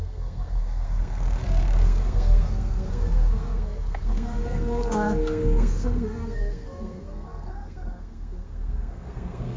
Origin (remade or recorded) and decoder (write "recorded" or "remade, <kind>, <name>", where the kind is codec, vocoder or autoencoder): remade, codec, SNAC